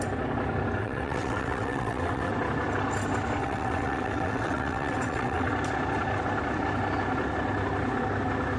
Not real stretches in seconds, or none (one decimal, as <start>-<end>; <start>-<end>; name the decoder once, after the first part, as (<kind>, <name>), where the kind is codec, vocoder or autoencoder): 0.8-2.3 (vocoder, WaveNeXt); 3.4-5.5